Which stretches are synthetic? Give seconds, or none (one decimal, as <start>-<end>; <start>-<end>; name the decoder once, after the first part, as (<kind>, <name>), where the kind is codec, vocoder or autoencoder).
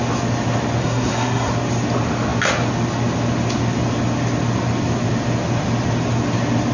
0.8-1.5 (codec, SNAC)